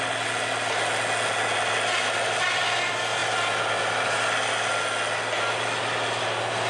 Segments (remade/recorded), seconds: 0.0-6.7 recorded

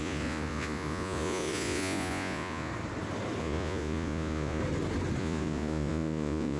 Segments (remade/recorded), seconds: 0.0-2.7 remade; 2.7-3.4 recorded; 3.4-4.6 remade; 4.6-5.2 recorded; 5.2-6.6 remade

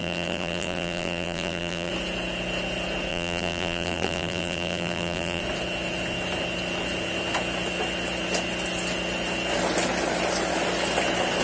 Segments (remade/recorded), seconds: 0.0-1.9 remade; 1.9-3.1 recorded; 3.1-5.4 remade; 5.4-11.4 recorded